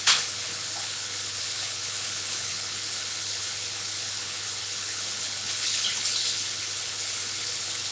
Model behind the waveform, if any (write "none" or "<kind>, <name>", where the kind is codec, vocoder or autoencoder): codec, HILCodec